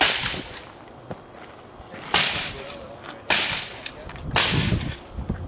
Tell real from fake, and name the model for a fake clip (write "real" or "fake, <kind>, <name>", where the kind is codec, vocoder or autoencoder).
real